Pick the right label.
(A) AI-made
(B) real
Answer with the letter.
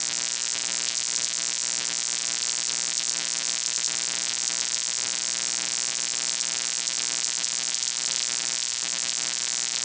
B